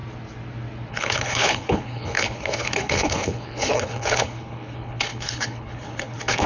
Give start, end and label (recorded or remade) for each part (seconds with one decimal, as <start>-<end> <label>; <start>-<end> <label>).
0.0-0.9 recorded; 0.9-6.5 remade